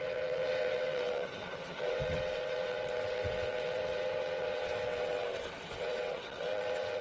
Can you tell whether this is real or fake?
fake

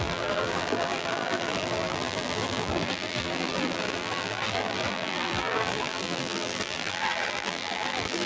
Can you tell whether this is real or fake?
fake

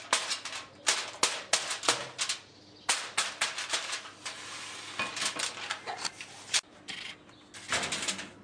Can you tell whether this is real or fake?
real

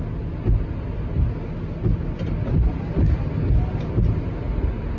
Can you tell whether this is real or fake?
real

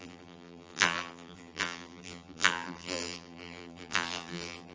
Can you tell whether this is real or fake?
fake